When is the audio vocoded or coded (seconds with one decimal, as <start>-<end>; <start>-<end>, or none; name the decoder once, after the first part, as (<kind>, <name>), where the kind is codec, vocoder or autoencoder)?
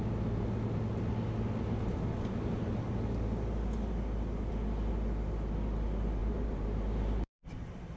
6.2-8.0 (vocoder, BigVGAN v2)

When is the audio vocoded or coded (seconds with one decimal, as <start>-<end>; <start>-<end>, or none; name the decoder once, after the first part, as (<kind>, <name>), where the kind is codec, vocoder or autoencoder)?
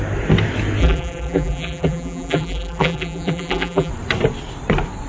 0.8-3.9 (vocoder, BigVGAN v2)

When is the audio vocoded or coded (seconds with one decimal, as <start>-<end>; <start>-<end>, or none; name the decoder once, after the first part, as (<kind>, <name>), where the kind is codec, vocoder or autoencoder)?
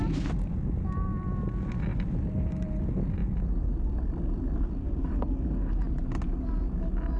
1.9-2.8 (vocoder, BigVGAN v2); 3.2-5.0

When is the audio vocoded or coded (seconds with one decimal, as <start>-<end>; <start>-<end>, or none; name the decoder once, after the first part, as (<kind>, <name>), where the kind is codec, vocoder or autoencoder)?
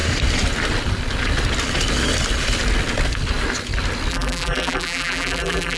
4.1-5.8 (vocoder, BigVGAN v2)